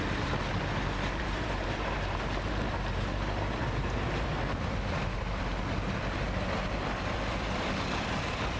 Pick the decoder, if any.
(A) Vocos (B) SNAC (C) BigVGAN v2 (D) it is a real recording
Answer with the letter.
C